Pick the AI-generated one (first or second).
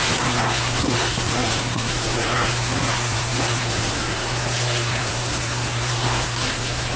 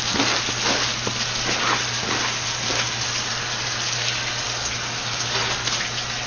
first